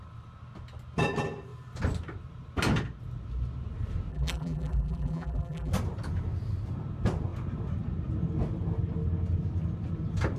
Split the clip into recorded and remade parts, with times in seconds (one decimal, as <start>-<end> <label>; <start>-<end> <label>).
0.0-4.1 recorded; 4.1-5.7 remade; 5.7-10.4 recorded

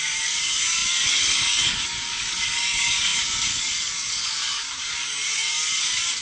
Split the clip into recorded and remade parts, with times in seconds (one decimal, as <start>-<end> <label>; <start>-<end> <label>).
0.0-6.2 remade

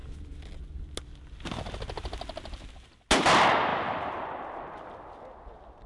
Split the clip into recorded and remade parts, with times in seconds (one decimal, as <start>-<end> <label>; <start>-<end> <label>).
0.0-3.7 recorded; 3.7-4.6 remade; 4.6-5.9 recorded

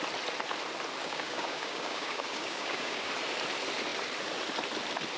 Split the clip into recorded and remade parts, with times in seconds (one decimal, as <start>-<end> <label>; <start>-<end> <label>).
0.0-1.0 recorded; 1.0-3.1 remade; 3.1-5.2 recorded

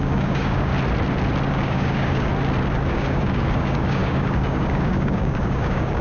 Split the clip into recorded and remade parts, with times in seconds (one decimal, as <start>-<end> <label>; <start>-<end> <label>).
0.0-0.7 remade; 0.7-1.5 recorded; 1.5-2.3 remade; 2.3-2.9 recorded; 2.9-6.0 remade

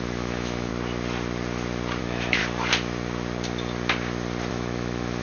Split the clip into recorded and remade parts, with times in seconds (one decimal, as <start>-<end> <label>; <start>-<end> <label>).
0.0-0.7 remade; 0.7-2.0 recorded; 2.0-2.4 remade; 2.4-4.5 recorded; 4.5-5.2 remade